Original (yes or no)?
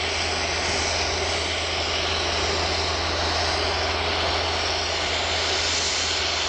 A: yes